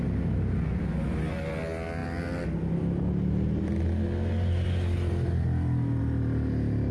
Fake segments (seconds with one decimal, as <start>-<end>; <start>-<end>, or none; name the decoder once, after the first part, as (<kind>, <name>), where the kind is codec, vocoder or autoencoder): none